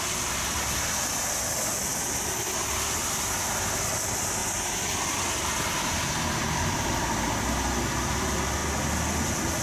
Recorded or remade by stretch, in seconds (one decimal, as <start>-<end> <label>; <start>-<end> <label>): 0.0-9.6 recorded